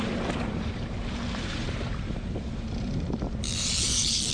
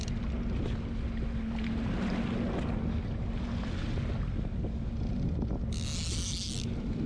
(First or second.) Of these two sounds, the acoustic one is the second